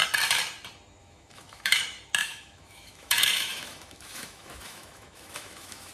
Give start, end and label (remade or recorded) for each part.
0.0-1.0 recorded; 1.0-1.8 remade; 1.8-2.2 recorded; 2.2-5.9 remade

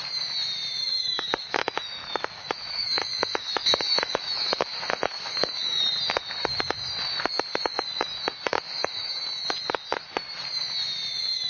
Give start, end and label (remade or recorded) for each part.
0.0-0.8 recorded; 0.8-5.8 remade; 5.8-8.5 recorded; 8.5-9.2 remade; 9.2-11.5 recorded

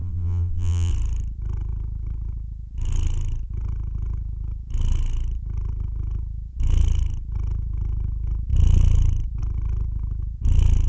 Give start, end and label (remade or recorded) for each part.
0.0-0.9 remade; 0.9-10.9 recorded